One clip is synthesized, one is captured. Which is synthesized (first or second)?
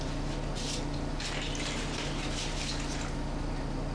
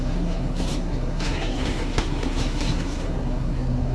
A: second